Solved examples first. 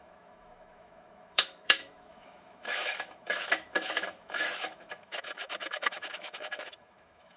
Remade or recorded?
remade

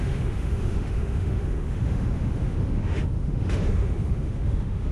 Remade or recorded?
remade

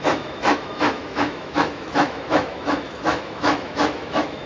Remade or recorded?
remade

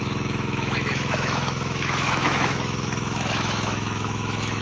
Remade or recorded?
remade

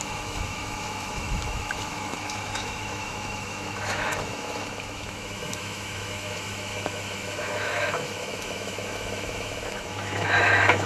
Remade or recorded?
remade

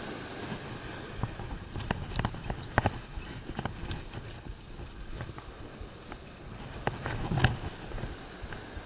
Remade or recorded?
recorded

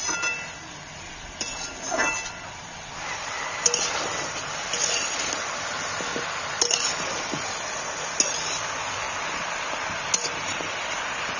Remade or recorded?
recorded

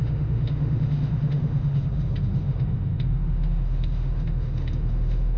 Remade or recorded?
remade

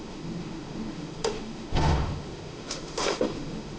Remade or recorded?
remade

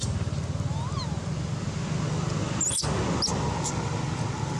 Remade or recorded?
recorded